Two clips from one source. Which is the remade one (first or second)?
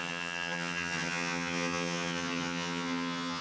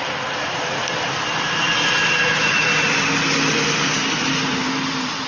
first